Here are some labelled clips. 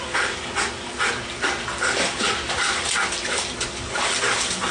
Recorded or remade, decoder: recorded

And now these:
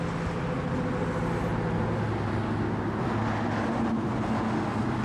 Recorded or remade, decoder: recorded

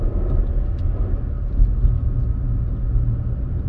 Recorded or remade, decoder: recorded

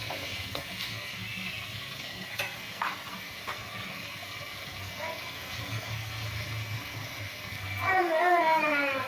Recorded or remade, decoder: remade, codec, SNAC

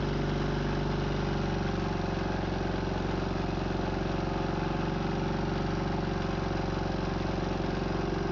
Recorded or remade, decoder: recorded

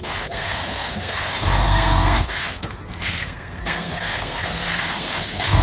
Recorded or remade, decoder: remade, codec, SNAC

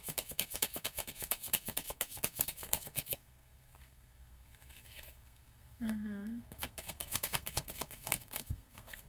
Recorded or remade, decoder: remade, codec, SNAC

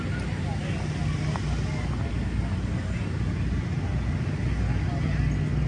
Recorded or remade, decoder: recorded